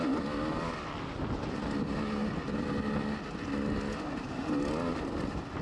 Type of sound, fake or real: real